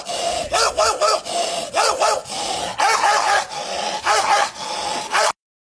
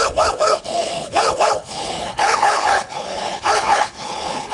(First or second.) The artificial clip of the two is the second